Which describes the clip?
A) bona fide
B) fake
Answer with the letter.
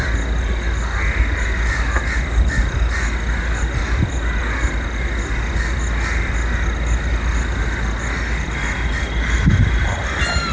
A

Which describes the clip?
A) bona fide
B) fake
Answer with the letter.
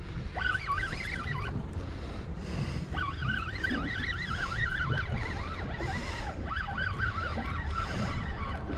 A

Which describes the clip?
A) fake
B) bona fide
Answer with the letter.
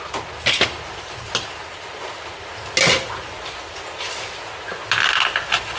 B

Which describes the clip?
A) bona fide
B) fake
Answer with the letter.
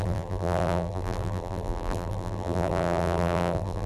B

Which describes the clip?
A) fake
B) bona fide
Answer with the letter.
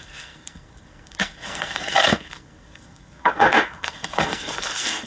A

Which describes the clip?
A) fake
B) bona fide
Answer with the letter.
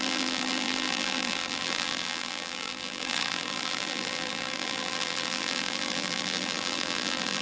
A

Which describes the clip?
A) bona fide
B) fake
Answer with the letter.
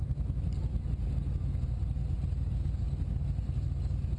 A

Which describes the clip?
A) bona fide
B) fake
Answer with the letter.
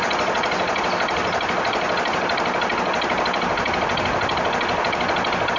A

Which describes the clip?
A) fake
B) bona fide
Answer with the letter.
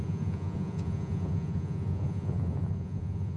A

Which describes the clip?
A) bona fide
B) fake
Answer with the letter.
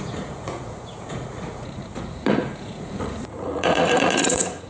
B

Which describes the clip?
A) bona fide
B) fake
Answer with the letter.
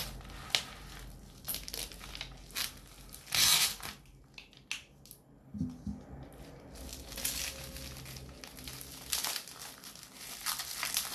A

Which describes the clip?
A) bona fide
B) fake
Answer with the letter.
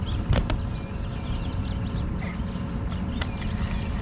A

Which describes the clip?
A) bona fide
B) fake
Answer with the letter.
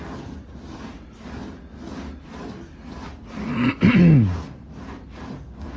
A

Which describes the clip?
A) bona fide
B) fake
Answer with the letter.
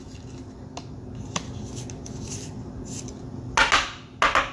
A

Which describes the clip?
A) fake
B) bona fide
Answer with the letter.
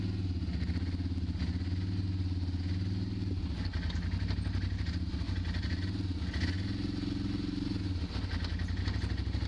B